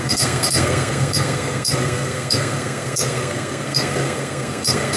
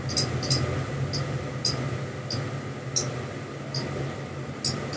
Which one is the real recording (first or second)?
second